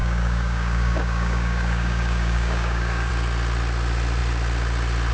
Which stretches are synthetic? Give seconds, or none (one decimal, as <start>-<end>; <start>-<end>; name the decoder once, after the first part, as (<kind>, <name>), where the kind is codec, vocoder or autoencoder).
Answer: 0.0-3.1 (codec, DAC)